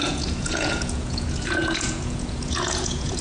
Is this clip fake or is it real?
fake